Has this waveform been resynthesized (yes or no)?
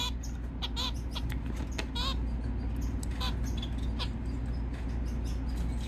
no